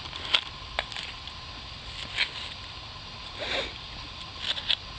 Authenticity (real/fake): real